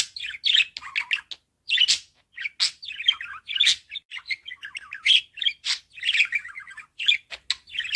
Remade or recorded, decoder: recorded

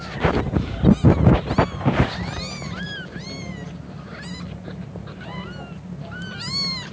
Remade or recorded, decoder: recorded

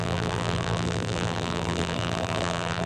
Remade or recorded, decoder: remade, vocoder, BigVGAN v2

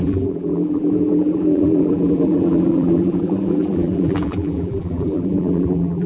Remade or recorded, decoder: remade, vocoder, BigVGAN v2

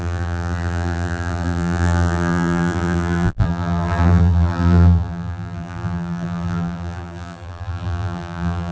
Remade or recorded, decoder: remade, vocoder, BigVGAN v2